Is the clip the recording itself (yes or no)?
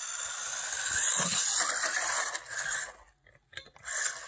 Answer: yes